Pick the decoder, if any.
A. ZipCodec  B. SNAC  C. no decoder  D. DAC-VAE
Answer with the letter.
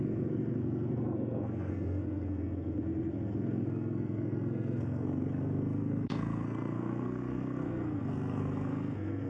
B